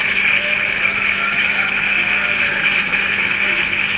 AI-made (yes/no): yes